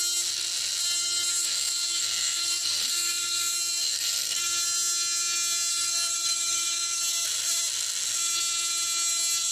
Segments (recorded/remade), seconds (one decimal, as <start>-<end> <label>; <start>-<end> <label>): 0.0-1.4 recorded; 1.4-4.4 remade; 4.4-5.7 recorded; 5.7-7.0 remade; 7.0-9.5 recorded